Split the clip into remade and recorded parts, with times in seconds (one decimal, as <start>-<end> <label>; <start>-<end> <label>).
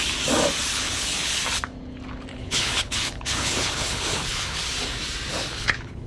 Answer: 0.0-0.7 recorded; 0.7-1.4 remade; 1.4-2.3 recorded; 2.3-4.6 remade; 4.6-5.3 recorded; 5.3-6.1 remade